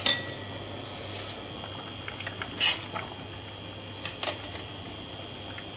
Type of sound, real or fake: real